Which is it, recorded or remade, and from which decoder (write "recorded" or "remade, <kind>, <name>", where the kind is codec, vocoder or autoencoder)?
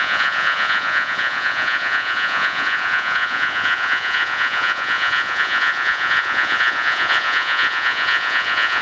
remade, vocoder, Vocos